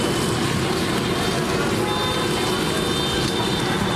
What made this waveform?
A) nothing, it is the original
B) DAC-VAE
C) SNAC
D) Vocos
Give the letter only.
A